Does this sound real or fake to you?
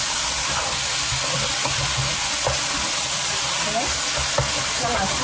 real